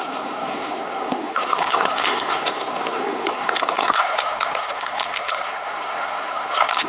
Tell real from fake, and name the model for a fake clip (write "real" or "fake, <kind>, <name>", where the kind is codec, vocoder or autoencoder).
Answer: fake, codec, SNAC